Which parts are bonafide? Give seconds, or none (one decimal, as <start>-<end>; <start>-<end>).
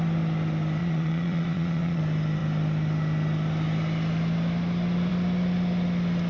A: 0.0-0.8; 2.0-6.3